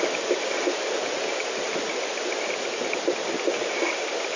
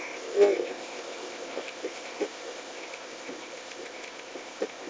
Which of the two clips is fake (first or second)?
second